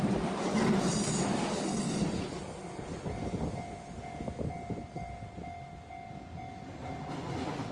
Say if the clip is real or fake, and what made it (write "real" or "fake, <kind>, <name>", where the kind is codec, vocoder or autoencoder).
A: real